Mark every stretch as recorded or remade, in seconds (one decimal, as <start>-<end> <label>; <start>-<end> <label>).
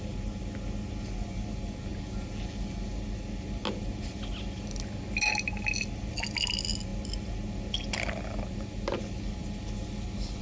0.0-10.4 recorded